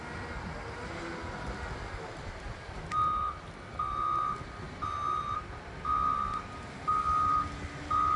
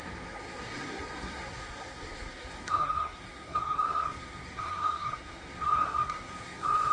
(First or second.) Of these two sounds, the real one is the first